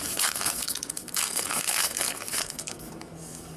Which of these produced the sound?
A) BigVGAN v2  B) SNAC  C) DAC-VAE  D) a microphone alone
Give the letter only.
B